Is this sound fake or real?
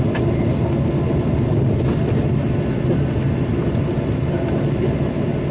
real